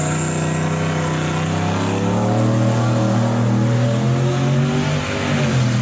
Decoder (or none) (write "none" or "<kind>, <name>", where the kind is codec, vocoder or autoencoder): none